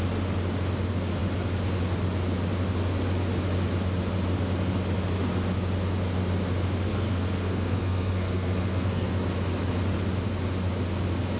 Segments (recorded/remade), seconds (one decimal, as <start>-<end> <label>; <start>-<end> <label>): 0.0-6.9 recorded; 6.9-9.1 remade; 9.1-11.4 recorded